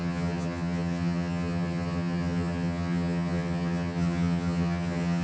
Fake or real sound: fake